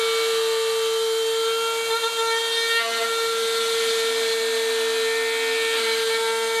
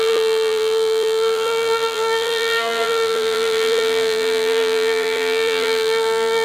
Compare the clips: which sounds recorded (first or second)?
first